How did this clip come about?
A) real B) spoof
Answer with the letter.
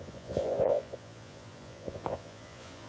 B